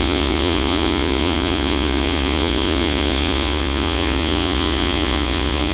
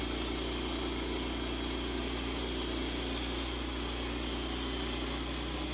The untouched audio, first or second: second